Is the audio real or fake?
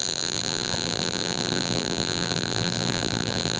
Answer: fake